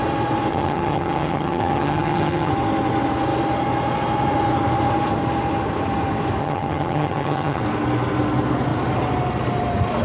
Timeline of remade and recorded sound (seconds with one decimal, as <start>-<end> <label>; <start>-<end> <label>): 0.0-0.5 recorded; 0.5-2.5 remade; 2.5-6.4 recorded; 6.4-7.6 remade; 7.6-10.0 recorded